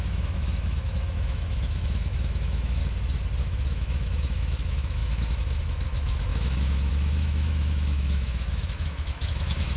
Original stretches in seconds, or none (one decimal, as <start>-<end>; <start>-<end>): 2.8-3.4